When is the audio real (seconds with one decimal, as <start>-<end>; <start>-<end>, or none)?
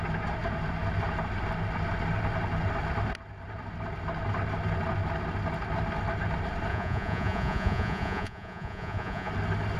0.0-6.7; 9.3-9.8